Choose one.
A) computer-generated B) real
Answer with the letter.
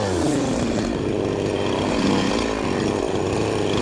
B